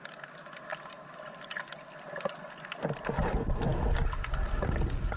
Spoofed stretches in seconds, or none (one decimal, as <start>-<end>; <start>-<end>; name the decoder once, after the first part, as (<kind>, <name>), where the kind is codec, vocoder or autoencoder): none